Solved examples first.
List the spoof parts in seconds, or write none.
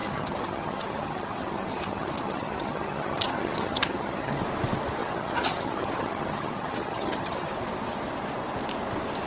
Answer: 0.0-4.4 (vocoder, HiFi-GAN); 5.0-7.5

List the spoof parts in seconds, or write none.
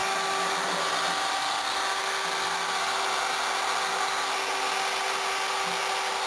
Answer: none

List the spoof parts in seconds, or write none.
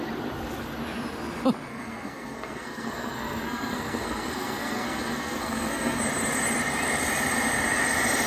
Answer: 1.7-6.0 (codec, SNAC)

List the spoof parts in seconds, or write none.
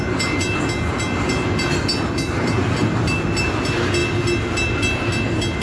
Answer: none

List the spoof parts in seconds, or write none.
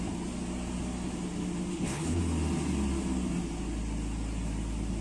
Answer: 1.7-2.2 (codec, HILCodec)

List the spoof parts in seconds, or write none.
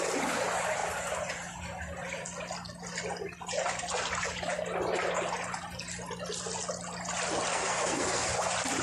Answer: 7.5-8.3 (codec, SNAC)